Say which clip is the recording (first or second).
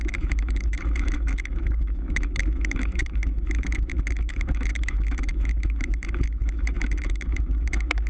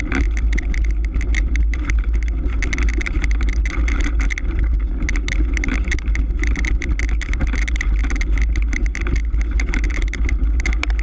second